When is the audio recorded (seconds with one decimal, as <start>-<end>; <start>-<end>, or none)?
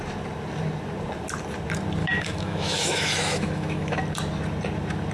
0.0-2.0; 4.0-5.1